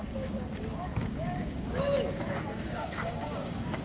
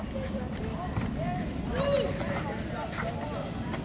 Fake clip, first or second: first